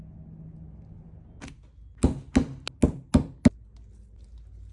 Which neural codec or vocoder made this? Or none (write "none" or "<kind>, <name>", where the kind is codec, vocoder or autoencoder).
none